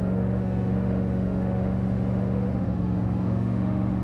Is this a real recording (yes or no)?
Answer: no